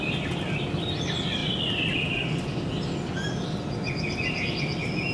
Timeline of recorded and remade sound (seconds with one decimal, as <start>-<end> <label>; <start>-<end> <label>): 0.0-5.1 recorded